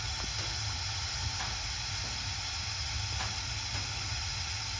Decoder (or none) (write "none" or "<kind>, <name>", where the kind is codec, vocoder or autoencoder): none